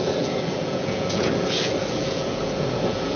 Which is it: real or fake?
fake